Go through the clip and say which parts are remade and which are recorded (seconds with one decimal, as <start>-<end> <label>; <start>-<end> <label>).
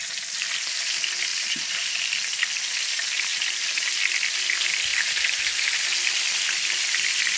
0.0-1.3 recorded; 1.3-1.9 remade; 1.9-3.3 recorded; 3.3-3.9 remade; 3.9-4.9 recorded; 4.9-5.8 remade; 5.8-7.4 recorded